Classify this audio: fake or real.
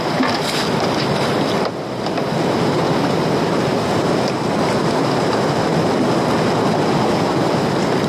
real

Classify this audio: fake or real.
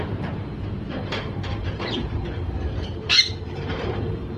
fake